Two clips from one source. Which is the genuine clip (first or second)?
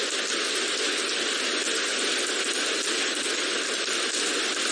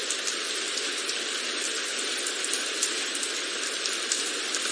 first